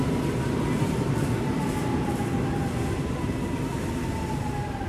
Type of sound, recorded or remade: recorded